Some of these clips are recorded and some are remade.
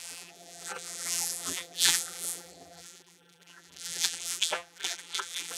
remade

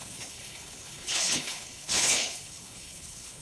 remade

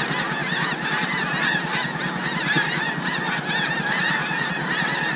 recorded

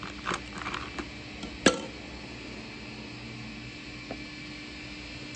recorded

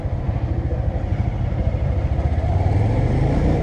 recorded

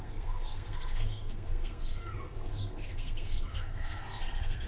remade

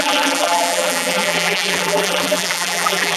remade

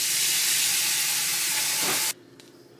recorded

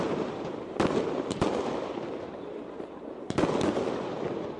remade